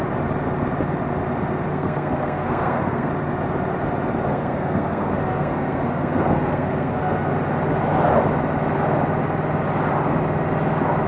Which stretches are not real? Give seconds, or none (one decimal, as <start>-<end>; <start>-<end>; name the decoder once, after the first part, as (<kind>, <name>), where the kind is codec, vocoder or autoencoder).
1.7-3.1 (codec, SNAC); 4.3-7.3

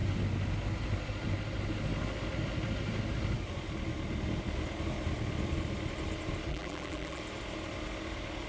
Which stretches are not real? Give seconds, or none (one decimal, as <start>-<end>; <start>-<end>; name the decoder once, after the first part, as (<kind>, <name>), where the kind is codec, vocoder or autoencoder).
6.5-7.2 (vocoder, BigVGAN v2)

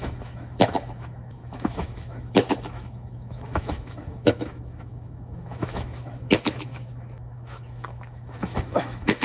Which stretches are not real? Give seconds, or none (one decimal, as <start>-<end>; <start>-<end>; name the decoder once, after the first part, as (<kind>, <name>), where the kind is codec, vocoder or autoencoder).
0.0-9.2 (autoencoder, DAC-VAE)

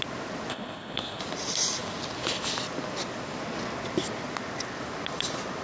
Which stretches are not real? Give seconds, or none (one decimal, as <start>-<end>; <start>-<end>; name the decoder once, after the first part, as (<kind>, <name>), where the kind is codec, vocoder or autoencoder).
0.5-1.2 (codec, HILCodec)

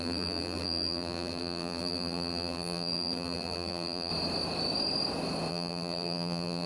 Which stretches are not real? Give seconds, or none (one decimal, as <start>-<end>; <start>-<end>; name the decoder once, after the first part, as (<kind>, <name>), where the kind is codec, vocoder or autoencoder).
0.0-4.1 (vocoder, BigVGAN v2); 5.5-6.7